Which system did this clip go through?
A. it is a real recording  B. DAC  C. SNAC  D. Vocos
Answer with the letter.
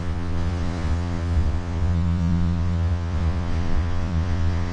D